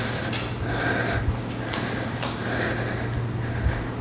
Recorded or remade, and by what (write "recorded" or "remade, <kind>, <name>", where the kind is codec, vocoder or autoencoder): recorded